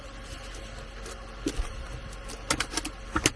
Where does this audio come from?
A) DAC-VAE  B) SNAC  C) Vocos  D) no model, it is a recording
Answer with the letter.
D